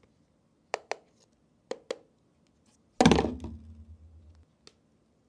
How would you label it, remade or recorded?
recorded